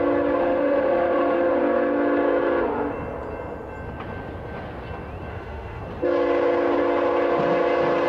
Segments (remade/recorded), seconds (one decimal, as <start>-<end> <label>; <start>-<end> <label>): 0.0-0.4 recorded; 0.4-1.5 remade; 1.5-5.3 recorded; 5.3-5.8 remade; 5.8-8.1 recorded